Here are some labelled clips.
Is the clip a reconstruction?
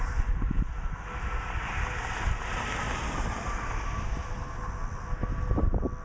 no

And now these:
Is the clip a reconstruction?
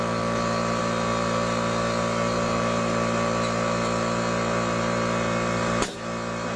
no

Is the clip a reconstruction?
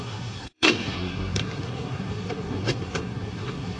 yes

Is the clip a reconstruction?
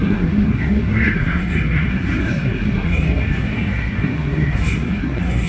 yes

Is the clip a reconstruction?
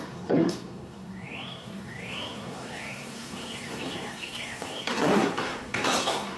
yes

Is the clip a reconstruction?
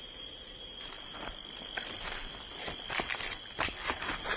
no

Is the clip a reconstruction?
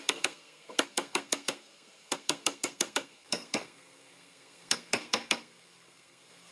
yes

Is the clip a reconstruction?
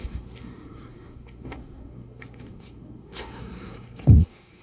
yes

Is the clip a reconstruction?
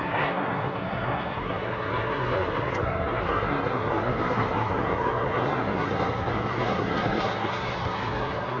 yes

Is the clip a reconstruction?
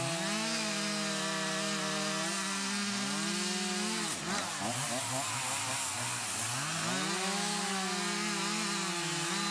no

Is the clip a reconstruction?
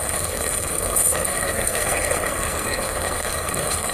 yes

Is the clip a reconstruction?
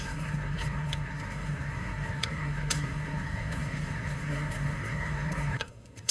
yes